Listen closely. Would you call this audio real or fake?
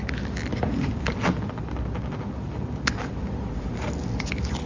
real